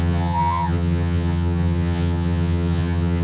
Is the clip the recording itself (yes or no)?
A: no